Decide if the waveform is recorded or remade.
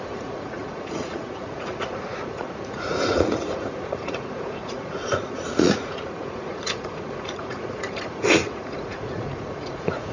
remade